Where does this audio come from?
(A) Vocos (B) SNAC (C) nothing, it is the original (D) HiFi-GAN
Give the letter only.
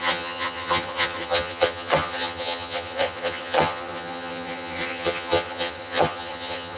D